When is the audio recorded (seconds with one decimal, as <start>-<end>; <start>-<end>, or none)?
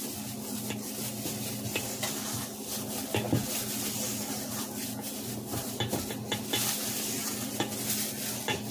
0.0-8.7